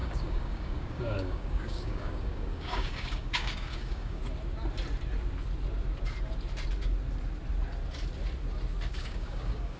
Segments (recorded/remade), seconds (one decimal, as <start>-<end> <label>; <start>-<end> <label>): 0.0-4.2 remade; 4.2-8.9 recorded; 8.9-9.8 remade

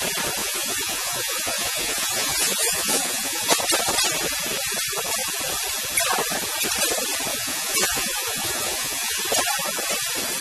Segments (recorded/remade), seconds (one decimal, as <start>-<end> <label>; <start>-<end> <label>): 0.0-0.4 recorded; 0.4-3.6 remade; 3.6-7.3 recorded; 7.3-9.2 remade; 9.2-10.4 recorded